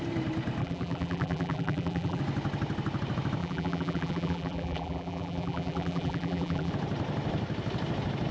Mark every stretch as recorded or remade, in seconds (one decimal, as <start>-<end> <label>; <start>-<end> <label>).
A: 0.0-0.6 recorded; 0.6-2.2 remade; 2.2-3.4 recorded; 3.4-6.7 remade; 6.7-8.3 recorded